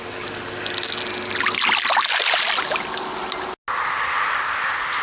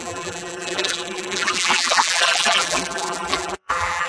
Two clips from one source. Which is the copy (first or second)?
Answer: second